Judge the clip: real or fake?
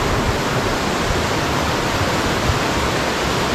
real